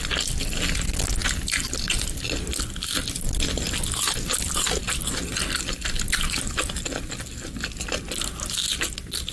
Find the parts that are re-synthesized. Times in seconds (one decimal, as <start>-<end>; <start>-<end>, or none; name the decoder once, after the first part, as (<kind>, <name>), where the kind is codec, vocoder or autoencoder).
none